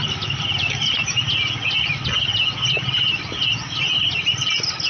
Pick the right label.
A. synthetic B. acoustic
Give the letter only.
B